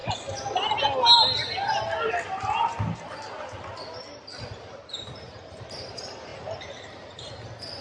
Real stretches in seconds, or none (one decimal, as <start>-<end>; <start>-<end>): 0.0-4.7; 6.3-7.8